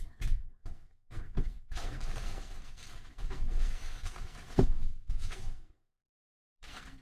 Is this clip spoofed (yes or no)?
yes